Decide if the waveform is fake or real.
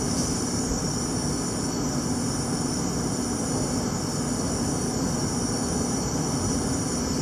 real